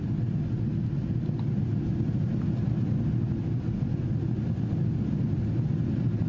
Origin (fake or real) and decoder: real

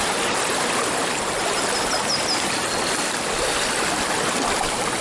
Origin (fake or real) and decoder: real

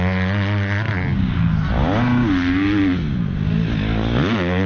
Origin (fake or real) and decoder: real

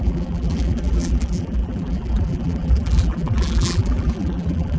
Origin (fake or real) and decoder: fake, vocoder, BigVGAN v2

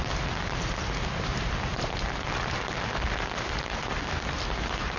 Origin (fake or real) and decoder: real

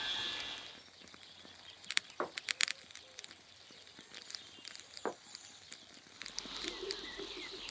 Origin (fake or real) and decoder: fake, vocoder, BigVGAN v2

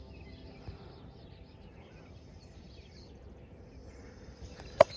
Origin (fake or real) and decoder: real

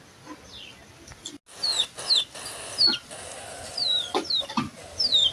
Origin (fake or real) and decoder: real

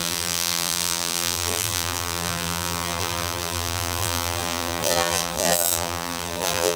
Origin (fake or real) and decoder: fake, vocoder, BigVGAN v2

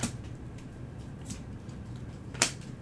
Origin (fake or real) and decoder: fake, vocoder, BigVGAN v2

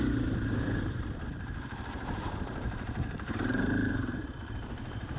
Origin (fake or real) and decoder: fake, vocoder, BigVGAN v2